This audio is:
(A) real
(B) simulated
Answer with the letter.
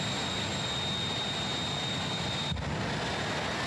A